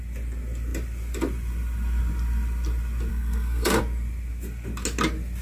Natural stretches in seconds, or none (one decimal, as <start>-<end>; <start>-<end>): 0.0-3.1; 3.8-5.4